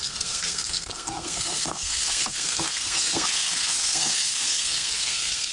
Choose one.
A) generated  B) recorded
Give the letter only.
A